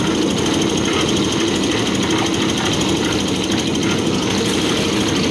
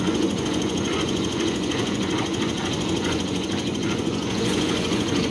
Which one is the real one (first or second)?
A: first